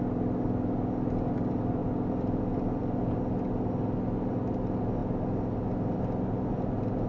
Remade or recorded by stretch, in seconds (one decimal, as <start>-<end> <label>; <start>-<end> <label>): 0.0-1.8 recorded; 1.8-2.8 remade; 2.8-7.1 recorded